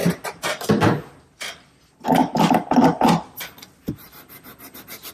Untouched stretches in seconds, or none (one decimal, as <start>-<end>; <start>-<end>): 0.0-5.1